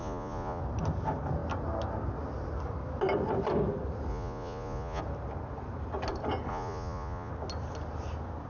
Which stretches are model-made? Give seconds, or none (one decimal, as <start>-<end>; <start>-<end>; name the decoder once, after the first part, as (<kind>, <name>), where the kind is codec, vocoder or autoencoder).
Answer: 0.0-0.6 (vocoder, Vocos); 4.1-5.0; 6.5-7.3